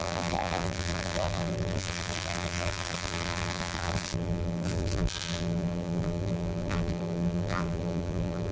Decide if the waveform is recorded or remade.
remade